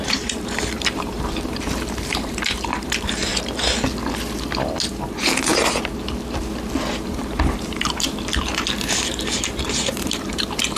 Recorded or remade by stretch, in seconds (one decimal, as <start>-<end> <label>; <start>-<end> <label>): 0.0-3.3 remade; 3.3-4.9 recorded; 4.9-5.5 remade; 5.5-6.9 recorded; 6.9-10.8 remade